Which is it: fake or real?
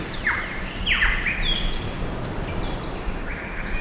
real